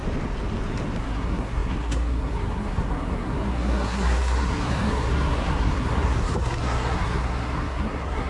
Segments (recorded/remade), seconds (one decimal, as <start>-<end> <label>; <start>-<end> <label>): 0.0-1.0 recorded; 1.0-8.3 remade